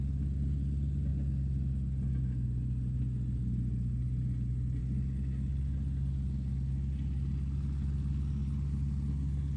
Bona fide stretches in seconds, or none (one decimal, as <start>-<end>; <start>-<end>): 0.0-9.6